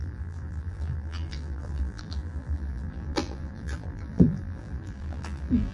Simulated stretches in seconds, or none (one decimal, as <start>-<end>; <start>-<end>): 0.0-5.7